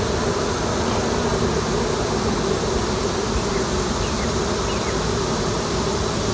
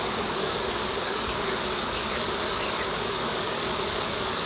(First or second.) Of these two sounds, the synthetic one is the second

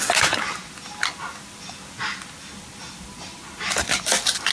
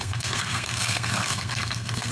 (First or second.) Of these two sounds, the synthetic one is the second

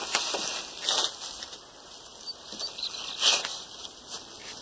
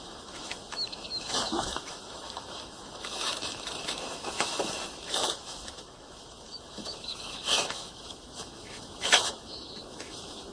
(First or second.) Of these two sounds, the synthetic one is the second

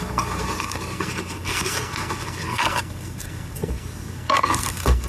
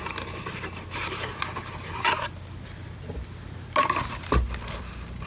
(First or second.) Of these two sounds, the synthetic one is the first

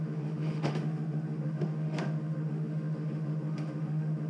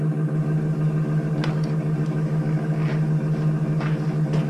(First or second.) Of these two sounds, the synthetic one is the first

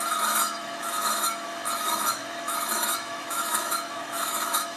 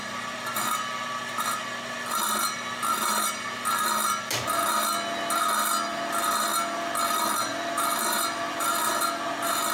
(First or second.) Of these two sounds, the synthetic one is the first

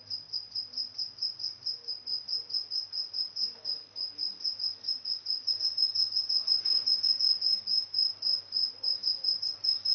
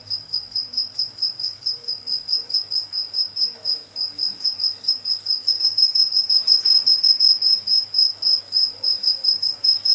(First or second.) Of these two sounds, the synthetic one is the second